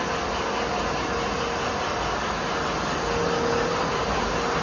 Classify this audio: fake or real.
real